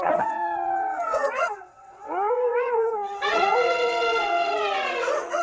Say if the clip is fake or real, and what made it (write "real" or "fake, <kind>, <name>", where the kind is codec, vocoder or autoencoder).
fake, vocoder, WaveNeXt